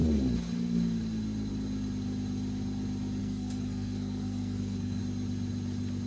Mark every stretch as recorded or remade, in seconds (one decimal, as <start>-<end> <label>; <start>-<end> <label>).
0.0-3.2 recorded; 3.2-5.0 remade; 5.0-6.1 recorded